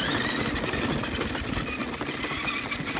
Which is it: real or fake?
real